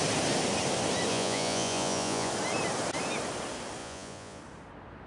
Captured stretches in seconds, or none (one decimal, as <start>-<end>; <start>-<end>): 0.0-1.1; 2.3-3.8; 4.4-5.1